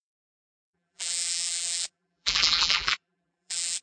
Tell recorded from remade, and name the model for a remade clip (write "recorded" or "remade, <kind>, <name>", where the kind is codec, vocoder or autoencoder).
remade, vocoder, BigVGAN v2